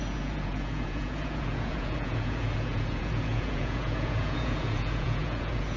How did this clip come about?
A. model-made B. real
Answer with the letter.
A